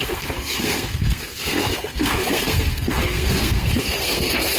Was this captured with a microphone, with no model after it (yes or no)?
no